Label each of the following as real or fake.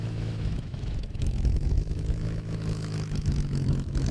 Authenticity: fake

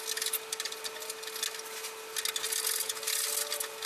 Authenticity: real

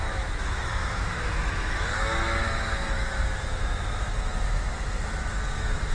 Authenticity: fake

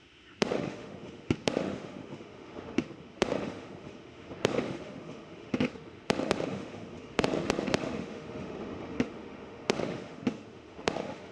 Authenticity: fake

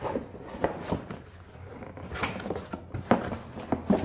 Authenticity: real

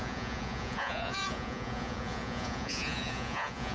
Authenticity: fake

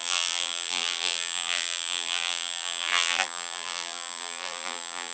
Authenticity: fake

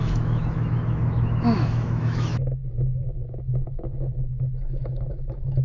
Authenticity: fake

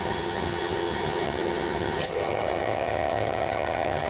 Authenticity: fake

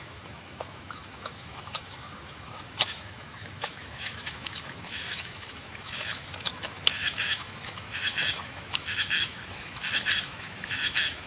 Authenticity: fake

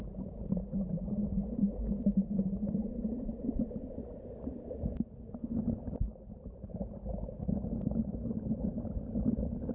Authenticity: real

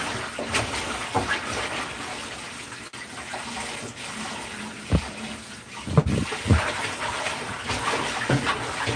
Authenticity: real